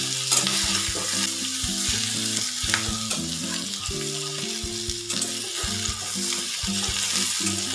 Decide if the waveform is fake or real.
real